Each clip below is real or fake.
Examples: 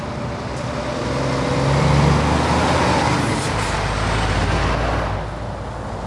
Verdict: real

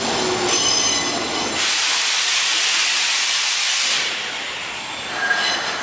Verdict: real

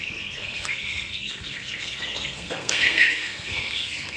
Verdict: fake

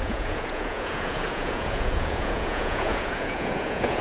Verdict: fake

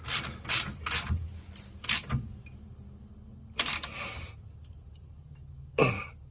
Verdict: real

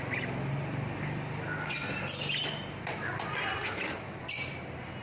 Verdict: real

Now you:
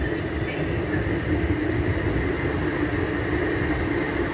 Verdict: real